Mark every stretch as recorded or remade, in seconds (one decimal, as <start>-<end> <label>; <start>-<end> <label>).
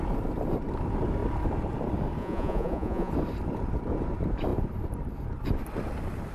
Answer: 0.0-2.2 recorded; 2.2-3.1 remade; 3.1-6.3 recorded